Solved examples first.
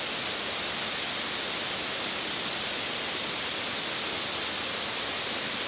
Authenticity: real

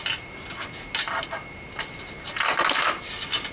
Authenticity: real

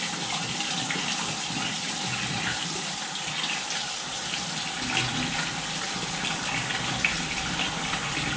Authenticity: real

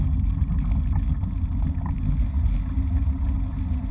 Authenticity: real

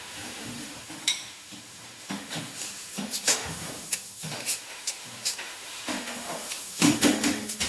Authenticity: fake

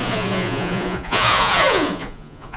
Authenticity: fake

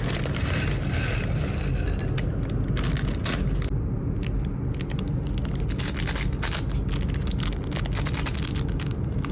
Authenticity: real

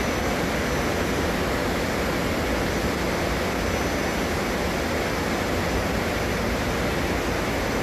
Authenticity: real